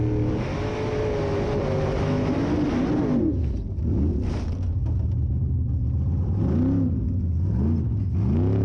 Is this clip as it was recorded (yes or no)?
yes